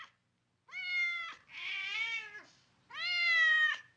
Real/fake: real